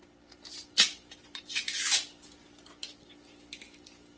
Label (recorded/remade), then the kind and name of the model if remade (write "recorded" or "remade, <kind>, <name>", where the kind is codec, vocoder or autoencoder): recorded